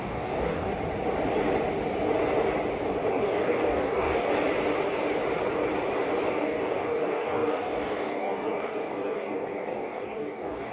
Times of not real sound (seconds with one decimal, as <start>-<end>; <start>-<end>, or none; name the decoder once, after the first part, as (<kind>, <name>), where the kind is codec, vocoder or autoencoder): 0.0-0.7 (codec, DAC); 3.1-4.3; 6.3-10.7